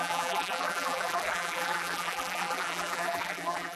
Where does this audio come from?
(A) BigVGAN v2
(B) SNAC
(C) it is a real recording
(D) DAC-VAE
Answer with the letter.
A